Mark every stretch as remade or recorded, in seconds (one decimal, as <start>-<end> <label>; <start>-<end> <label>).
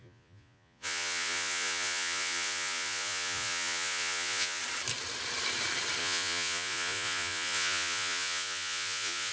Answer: 0.0-4.6 remade; 4.6-6.0 recorded; 6.0-9.3 remade